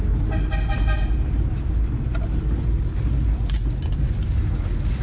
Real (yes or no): yes